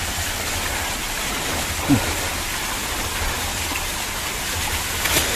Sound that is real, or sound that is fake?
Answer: real